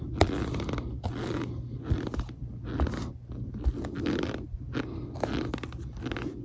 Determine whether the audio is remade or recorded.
recorded